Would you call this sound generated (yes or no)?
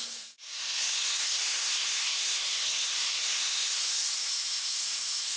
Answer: yes